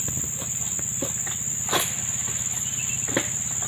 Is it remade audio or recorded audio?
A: recorded